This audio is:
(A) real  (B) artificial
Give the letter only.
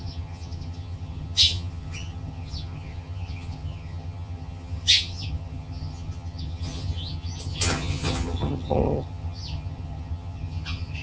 B